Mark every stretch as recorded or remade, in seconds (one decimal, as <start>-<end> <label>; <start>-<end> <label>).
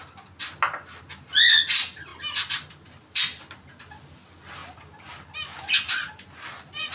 0.0-2.1 recorded; 2.1-3.4 remade; 3.4-4.6 recorded; 4.6-6.1 remade; 6.1-6.9 recorded